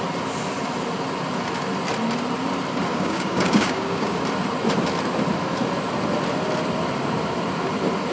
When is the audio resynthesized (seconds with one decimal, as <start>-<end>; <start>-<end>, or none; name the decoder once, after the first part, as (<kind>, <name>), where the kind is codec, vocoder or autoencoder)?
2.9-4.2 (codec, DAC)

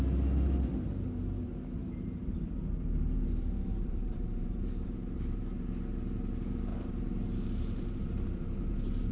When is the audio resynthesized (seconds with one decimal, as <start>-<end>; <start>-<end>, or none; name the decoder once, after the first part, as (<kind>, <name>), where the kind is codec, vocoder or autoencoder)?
1.8-5.7 (vocoder, BigVGAN v2); 6.7-9.1

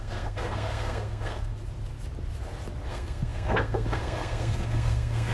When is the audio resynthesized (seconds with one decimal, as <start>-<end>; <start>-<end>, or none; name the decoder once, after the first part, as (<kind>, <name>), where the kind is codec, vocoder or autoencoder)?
0.0-1.5 (codec, SNAC); 2.9-5.3